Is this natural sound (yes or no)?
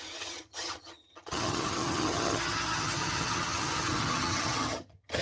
no